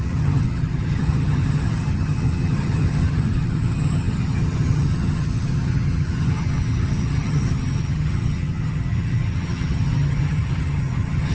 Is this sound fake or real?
fake